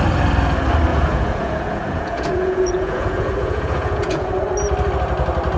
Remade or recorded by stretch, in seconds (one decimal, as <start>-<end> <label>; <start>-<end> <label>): 0.0-0.9 recorded; 0.9-4.3 remade; 4.3-5.6 recorded